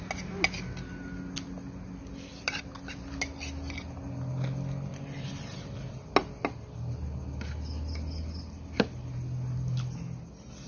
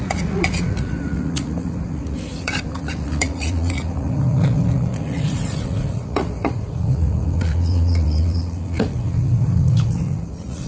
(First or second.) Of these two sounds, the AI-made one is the second